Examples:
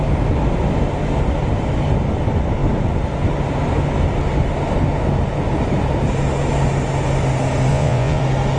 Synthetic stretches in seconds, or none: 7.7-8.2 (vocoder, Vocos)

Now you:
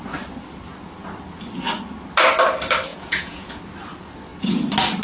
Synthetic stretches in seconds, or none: 2.9-3.5 (vocoder, Vocos)

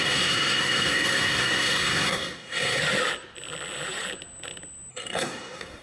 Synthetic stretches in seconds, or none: 0.0-2.8 (codec, SNAC); 4.9-5.8